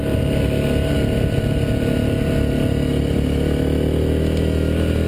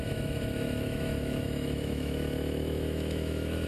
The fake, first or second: second